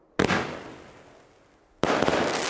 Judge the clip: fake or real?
real